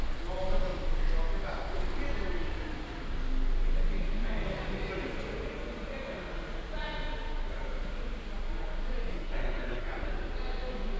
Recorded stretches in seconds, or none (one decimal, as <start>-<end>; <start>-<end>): 0.0-9.1; 10.1-11.0